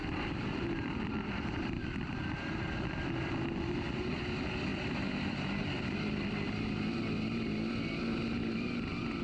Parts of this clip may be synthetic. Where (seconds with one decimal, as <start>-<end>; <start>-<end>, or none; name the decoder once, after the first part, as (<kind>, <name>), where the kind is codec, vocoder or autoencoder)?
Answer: none